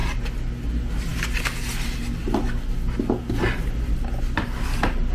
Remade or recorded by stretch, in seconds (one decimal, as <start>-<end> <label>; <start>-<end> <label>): 0.0-5.1 recorded